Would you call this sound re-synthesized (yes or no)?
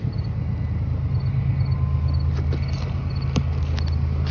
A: no